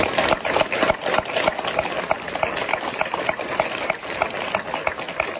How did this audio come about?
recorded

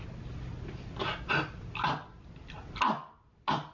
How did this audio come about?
recorded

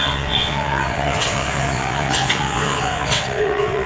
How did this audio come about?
remade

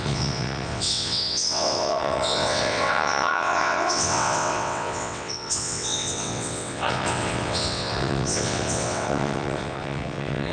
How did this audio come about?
remade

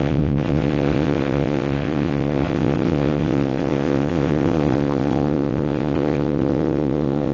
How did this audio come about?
remade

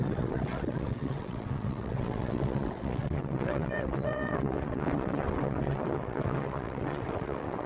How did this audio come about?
remade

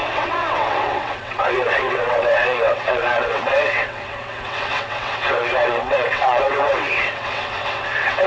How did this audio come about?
remade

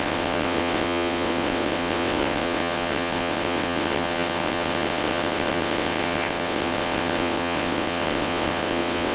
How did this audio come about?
remade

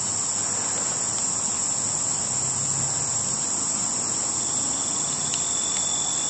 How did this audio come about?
recorded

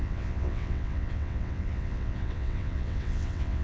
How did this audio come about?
remade